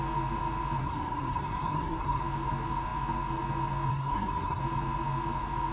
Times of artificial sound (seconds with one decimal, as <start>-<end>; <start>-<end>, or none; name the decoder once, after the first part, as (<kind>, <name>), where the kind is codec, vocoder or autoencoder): 0.8-2.2 (codec, SNAC); 3.9-4.6